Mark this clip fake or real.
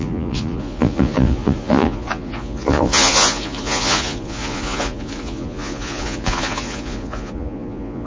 fake